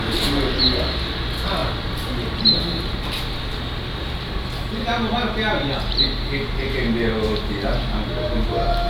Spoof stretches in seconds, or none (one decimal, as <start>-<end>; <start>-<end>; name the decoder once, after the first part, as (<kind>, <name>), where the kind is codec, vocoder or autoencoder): 1.6-2.9 (vocoder, BigVGAN v2)